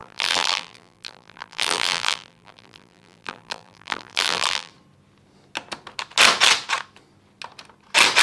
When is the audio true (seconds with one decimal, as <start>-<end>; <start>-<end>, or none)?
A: 4.7-8.2